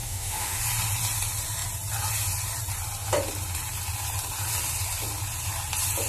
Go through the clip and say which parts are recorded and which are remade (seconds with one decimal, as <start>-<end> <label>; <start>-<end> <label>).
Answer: 0.0-0.6 remade; 0.6-6.1 recorded